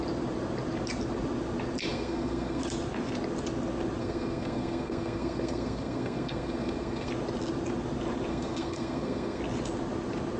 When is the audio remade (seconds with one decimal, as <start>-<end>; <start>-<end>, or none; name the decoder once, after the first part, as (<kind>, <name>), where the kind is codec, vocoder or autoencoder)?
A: 1.9-2.6 (codec, SNAC); 4.0-7.1; 8.3-9.4